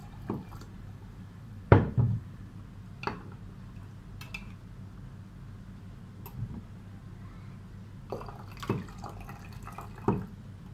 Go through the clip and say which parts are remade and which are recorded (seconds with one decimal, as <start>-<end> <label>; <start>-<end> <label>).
0.0-2.5 remade; 2.5-10.7 recorded